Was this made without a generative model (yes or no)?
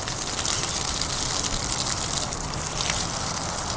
yes